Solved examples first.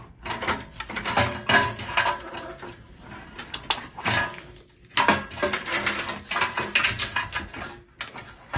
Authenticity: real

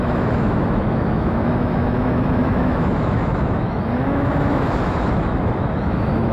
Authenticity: fake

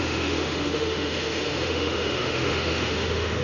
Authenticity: fake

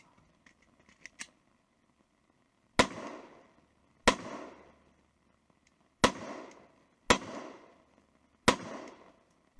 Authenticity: real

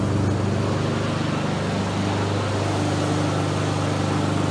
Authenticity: real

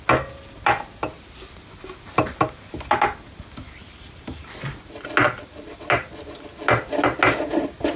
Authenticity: real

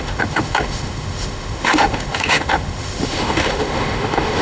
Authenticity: fake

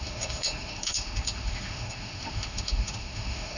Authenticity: fake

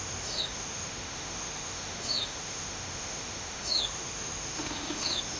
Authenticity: fake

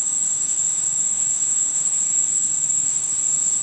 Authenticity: fake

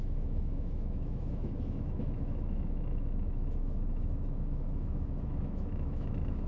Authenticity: fake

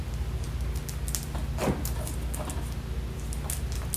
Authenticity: real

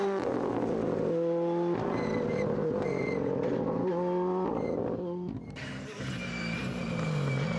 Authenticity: real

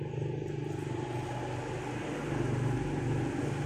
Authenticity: real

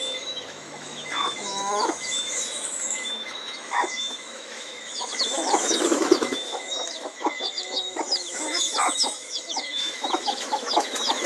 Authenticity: fake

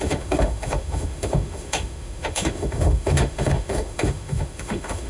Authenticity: fake